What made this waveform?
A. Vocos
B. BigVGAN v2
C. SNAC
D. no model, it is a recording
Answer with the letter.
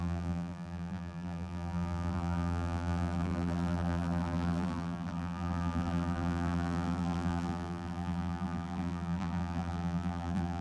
B